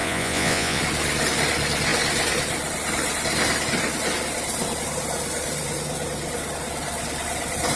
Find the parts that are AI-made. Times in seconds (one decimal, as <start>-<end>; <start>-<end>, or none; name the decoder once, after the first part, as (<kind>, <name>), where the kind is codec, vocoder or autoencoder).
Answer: 0.0-0.8 (vocoder, Vocos)